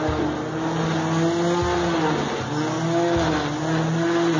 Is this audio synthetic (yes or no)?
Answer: no